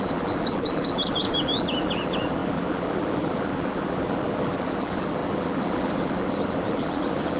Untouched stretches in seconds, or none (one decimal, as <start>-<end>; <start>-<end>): none